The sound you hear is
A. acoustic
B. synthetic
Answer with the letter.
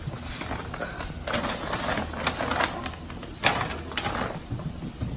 A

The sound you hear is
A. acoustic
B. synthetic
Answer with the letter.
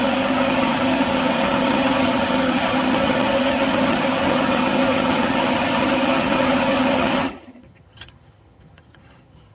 B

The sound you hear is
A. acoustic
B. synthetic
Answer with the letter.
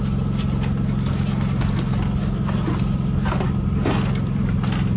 A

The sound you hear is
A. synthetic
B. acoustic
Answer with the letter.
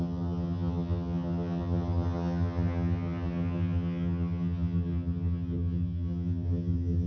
A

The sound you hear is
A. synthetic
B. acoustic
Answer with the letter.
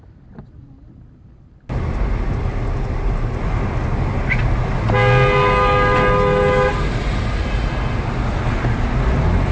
B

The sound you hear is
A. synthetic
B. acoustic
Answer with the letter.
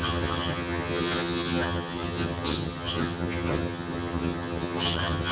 A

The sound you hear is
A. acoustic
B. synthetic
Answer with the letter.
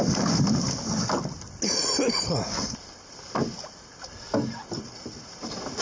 A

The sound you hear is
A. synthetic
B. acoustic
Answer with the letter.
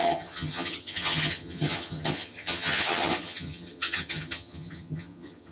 A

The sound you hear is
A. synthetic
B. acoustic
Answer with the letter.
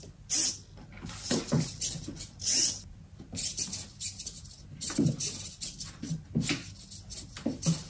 B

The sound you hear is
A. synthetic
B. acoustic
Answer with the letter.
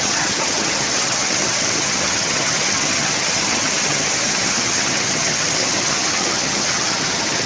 A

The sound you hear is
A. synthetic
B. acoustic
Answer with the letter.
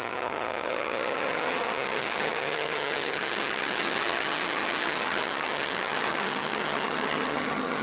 A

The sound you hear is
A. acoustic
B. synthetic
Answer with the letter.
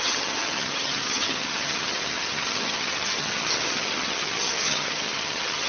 B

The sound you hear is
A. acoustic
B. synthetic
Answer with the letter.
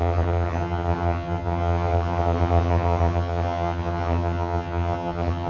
B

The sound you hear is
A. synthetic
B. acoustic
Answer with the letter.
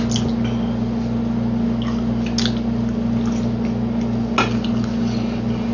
B